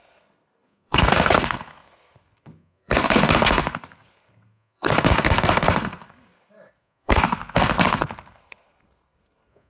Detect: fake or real fake